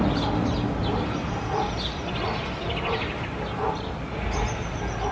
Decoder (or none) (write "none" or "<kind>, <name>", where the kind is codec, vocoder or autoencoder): none